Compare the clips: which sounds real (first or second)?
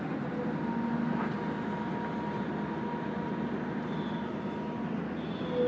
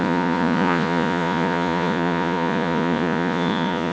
first